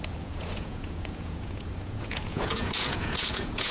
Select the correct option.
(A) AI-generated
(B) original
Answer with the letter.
A